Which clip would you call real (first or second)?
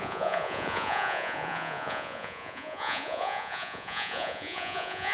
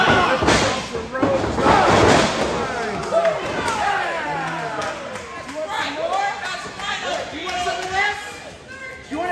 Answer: second